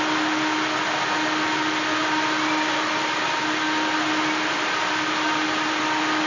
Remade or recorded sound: recorded